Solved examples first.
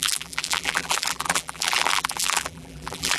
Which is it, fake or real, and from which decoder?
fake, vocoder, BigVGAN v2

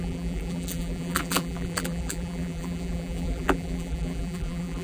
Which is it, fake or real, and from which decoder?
fake, vocoder, BigVGAN v2